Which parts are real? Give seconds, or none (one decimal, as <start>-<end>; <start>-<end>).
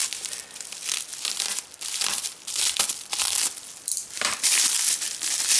0.0-0.5